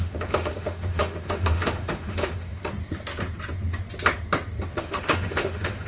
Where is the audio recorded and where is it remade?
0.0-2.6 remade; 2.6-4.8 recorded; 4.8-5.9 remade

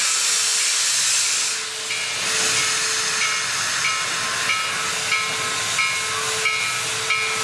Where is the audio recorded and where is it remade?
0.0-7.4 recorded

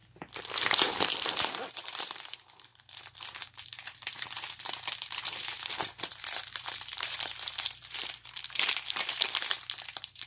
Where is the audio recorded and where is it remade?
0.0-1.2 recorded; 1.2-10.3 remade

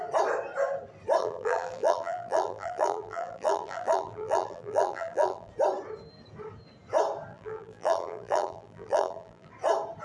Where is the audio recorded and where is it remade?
0.0-1.2 recorded; 1.2-5.5 remade; 5.5-7.3 recorded; 7.3-9.5 remade; 9.5-10.0 recorded

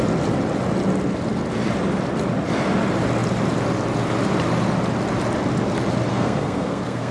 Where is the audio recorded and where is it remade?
0.0-6.1 recorded; 6.1-7.1 remade

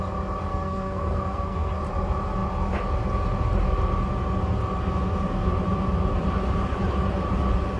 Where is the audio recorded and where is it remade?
0.0-0.5 recorded; 0.5-1.7 remade; 1.7-7.8 recorded

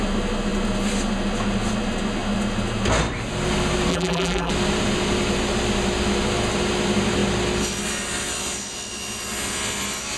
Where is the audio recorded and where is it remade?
0.0-3.9 recorded; 3.9-4.5 remade; 4.5-10.2 recorded

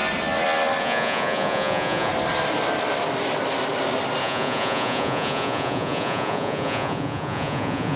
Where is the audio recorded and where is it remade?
0.0-0.8 recorded; 0.8-2.1 remade; 2.1-4.2 recorded; 4.2-8.0 remade